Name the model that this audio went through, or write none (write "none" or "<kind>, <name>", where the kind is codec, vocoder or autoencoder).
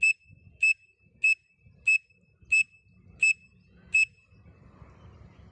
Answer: none